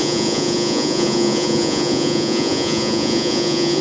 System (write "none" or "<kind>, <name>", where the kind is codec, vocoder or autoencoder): vocoder, Vocos